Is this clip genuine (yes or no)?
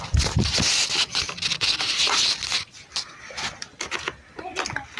yes